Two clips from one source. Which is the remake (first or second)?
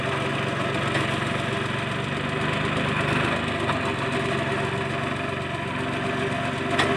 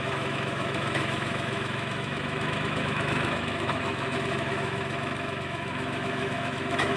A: second